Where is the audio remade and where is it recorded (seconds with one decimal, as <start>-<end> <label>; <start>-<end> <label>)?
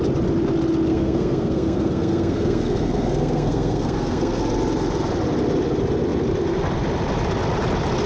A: 0.0-0.9 recorded; 0.9-4.4 remade; 4.4-8.1 recorded